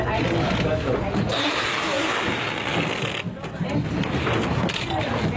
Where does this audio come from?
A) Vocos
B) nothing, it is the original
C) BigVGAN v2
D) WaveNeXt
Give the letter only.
B